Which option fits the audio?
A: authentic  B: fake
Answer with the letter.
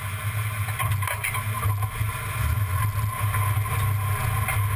A